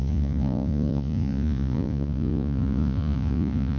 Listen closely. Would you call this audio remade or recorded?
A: remade